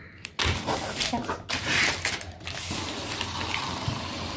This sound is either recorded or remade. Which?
recorded